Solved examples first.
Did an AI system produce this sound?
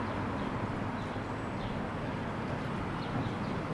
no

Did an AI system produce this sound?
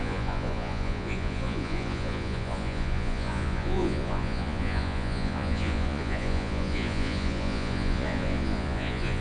yes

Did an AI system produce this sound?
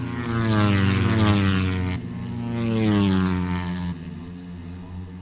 no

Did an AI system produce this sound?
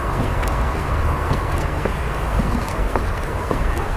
yes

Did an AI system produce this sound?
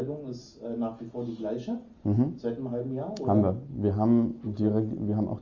no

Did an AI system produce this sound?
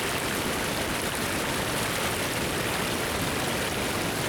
no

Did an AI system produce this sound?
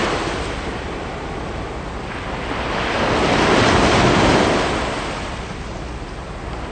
no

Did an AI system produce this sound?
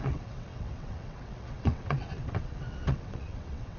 yes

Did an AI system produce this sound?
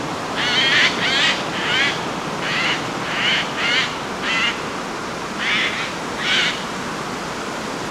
no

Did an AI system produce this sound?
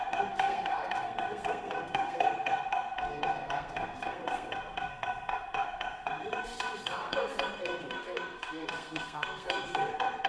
yes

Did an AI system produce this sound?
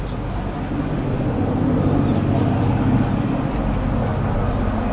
no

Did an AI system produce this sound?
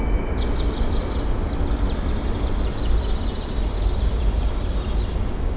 no